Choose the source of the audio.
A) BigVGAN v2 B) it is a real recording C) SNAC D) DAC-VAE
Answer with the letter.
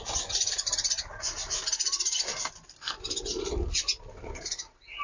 B